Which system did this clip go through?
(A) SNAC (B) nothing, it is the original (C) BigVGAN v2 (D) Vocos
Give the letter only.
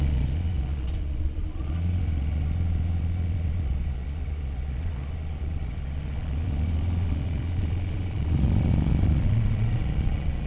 D